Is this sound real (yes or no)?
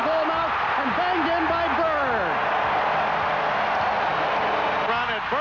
yes